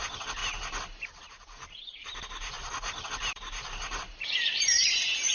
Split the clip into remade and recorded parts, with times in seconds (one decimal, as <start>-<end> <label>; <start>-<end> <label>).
0.0-0.4 remade; 0.4-1.2 recorded; 1.2-5.3 remade